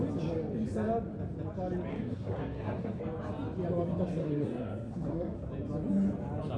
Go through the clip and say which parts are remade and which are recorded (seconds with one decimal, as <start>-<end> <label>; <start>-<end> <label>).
0.0-1.9 recorded; 1.9-3.0 remade; 3.0-4.2 recorded; 4.2-5.5 remade; 5.5-6.6 recorded